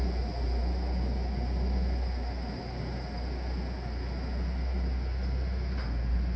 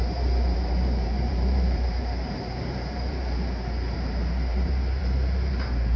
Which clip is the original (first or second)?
first